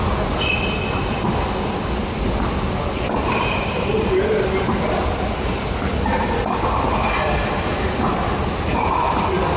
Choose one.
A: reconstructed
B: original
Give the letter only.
B